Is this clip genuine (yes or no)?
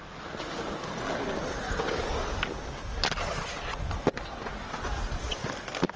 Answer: yes